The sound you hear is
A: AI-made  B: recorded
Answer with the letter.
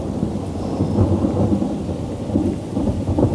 B